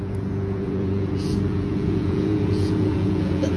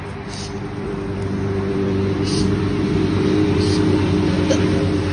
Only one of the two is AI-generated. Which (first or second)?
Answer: first